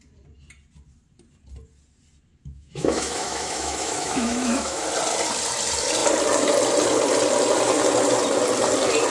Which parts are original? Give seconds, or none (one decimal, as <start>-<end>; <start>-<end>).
0.0-2.4; 4.8-9.1